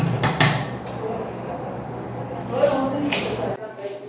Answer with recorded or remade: recorded